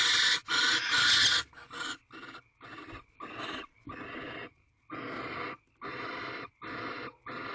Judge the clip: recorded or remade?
recorded